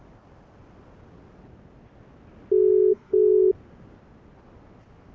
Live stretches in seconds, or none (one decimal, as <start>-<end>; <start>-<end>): 0.0-2.9; 3.5-5.1